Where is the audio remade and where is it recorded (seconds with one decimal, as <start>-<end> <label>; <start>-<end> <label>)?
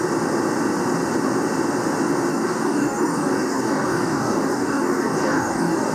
0.0-2.3 recorded; 2.3-5.9 remade